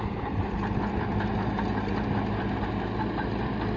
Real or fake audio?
real